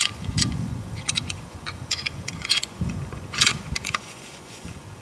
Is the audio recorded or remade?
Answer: remade